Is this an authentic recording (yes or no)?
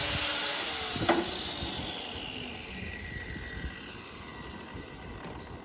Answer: yes